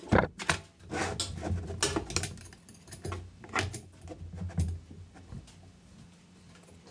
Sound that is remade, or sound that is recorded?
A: recorded